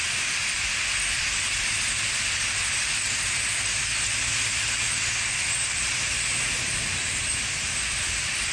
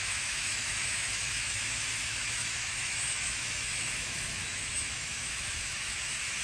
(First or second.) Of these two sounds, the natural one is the first